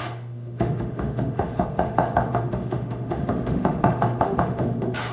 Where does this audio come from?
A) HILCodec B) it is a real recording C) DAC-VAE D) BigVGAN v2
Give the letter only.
C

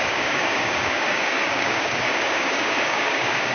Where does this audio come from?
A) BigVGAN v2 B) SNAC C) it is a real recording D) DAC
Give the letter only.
D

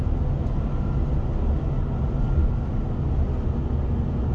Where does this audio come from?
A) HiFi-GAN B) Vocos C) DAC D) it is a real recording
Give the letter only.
D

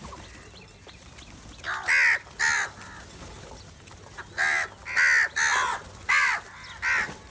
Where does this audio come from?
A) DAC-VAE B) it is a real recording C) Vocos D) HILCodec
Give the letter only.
B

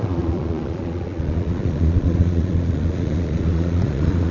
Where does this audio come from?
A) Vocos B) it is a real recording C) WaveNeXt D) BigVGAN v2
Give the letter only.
A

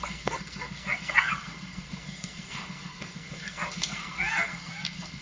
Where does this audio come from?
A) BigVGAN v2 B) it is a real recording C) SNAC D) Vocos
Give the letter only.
C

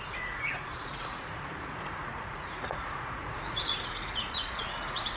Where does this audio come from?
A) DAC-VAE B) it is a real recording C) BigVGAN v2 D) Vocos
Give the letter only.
D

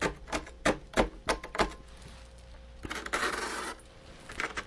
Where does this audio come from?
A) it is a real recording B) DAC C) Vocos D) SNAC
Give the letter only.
A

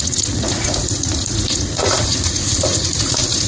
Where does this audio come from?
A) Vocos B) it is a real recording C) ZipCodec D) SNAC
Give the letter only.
A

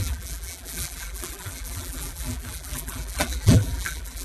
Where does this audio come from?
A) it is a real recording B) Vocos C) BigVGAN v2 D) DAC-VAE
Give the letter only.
C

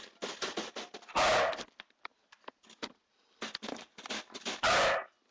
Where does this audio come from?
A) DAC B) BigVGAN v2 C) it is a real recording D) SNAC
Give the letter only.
C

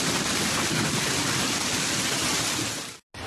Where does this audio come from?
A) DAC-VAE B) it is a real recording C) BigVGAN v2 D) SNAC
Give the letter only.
B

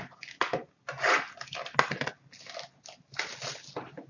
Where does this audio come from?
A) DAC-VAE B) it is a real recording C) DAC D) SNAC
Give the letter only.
B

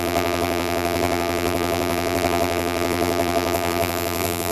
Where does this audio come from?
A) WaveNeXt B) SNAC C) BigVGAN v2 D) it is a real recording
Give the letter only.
C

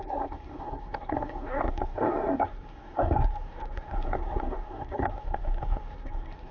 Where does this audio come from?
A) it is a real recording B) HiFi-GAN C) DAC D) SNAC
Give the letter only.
D